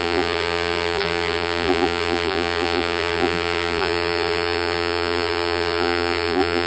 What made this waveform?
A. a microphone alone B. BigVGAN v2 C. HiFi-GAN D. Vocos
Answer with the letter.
B